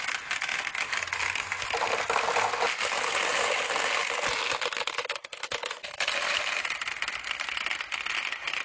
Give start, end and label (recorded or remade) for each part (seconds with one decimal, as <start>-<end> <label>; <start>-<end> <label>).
0.0-8.6 recorded